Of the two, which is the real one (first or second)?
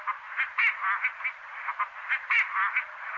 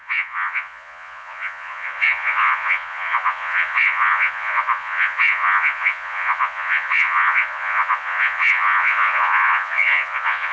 first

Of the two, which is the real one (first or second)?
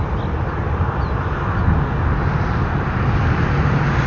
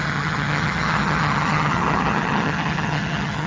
first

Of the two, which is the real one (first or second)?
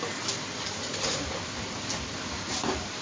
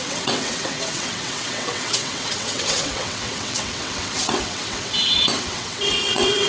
first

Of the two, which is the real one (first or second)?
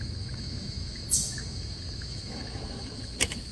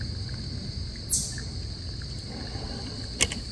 second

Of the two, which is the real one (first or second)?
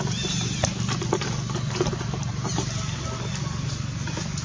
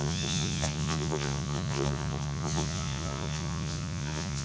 first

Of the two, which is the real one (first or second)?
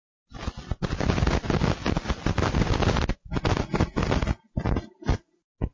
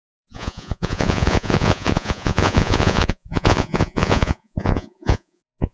first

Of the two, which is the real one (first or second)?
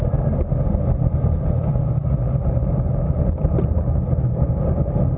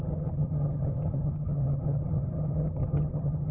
first